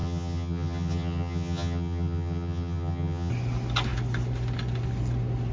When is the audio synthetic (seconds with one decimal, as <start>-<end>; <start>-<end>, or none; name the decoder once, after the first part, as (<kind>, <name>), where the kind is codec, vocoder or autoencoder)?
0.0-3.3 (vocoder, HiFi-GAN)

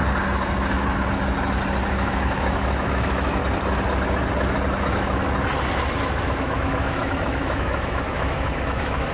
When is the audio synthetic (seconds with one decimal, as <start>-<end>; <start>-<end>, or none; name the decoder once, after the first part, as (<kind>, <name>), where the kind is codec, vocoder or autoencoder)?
1.9-3.4 (autoencoder, DAC-VAE); 4.8-5.2; 6.4-9.1

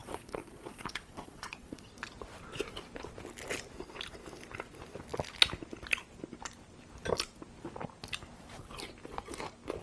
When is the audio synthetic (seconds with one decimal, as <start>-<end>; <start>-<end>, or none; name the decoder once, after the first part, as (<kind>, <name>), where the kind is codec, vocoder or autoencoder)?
0.0-1.9 (vocoder, Vocos)